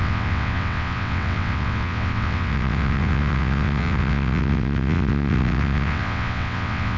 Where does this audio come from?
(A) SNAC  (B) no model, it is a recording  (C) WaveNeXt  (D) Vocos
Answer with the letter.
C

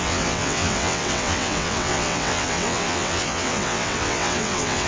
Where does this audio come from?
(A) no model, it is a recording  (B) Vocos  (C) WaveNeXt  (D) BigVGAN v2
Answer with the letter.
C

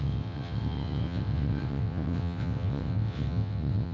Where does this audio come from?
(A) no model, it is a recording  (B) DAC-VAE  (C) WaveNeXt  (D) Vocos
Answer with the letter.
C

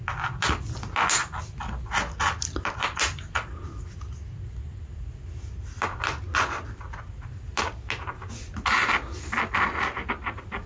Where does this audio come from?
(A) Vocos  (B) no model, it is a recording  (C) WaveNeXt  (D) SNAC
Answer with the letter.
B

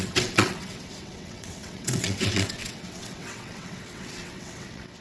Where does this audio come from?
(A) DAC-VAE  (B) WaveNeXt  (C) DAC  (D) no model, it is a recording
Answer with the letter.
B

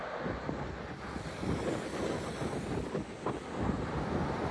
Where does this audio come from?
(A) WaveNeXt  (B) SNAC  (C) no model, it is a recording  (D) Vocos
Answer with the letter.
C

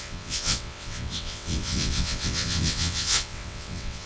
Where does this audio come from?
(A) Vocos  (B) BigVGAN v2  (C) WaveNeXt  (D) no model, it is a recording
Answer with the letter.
C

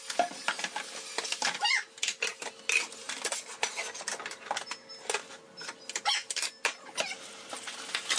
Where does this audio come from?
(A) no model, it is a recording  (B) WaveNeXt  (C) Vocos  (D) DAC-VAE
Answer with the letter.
A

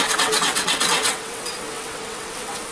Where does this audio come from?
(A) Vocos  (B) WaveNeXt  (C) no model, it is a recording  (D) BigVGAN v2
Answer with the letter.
B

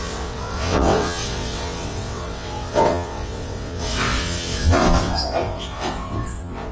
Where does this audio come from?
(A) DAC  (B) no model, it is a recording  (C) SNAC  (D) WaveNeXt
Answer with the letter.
D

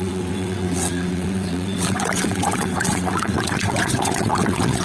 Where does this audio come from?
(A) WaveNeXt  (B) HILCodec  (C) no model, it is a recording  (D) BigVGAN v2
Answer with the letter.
A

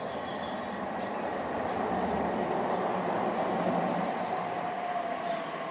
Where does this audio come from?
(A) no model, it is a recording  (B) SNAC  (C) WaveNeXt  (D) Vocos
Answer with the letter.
A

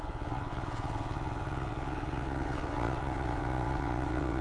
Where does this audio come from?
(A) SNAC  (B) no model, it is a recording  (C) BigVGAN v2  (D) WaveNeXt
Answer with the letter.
D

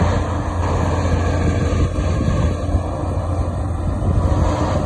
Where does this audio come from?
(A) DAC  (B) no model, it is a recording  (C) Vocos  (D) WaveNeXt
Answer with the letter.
B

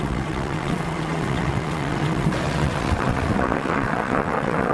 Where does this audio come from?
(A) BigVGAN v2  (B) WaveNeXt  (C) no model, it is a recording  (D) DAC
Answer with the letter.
B